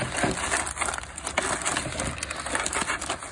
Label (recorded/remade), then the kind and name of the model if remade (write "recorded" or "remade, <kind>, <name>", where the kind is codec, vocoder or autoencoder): recorded